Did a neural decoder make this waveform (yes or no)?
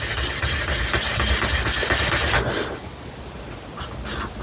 no